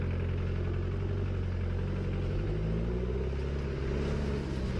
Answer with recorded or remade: recorded